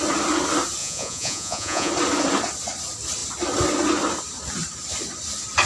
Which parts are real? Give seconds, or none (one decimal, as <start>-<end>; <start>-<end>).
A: 0.0-0.8; 1.9-5.7